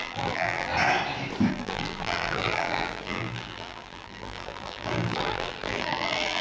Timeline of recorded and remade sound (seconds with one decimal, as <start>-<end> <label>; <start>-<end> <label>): 0.0-0.7 remade; 0.7-1.5 recorded; 1.5-6.4 remade

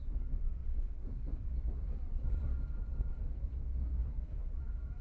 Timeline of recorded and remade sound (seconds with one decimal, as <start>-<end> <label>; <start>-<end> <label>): 0.0-0.6 recorded; 0.6-3.6 remade; 3.6-4.0 recorded; 4.0-4.6 remade; 4.6-5.0 recorded

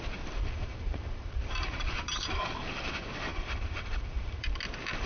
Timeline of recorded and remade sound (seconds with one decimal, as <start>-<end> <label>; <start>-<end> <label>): 0.0-0.4 recorded; 0.4-2.4 remade; 2.4-3.3 recorded; 3.3-4.6 remade; 4.6-5.1 recorded